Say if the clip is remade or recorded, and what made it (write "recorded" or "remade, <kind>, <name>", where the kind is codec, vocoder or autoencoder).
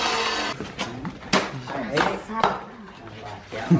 recorded